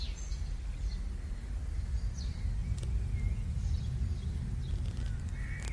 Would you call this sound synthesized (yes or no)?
no